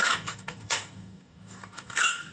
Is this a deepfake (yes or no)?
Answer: yes